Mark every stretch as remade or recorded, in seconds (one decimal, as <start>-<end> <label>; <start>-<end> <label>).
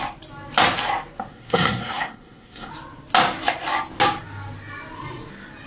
0.0-1.3 recorded; 1.3-2.7 remade; 2.7-5.7 recorded